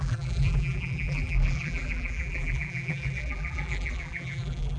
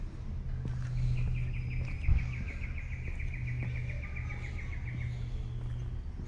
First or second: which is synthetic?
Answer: first